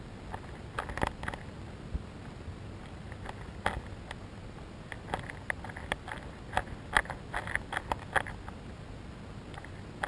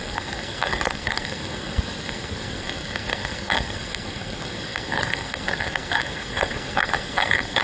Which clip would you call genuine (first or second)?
first